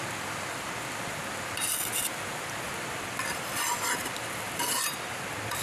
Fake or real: fake